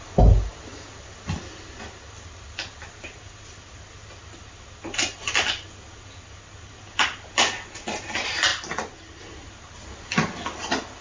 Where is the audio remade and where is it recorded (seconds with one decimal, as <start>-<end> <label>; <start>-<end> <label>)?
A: 0.0-11.0 recorded